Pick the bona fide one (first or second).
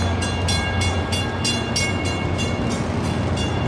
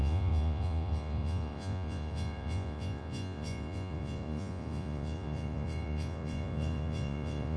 first